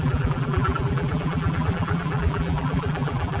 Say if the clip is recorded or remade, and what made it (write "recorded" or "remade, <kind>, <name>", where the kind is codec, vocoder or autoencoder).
remade, vocoder, BigVGAN v2